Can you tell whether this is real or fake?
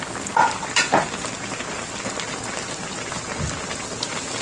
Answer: real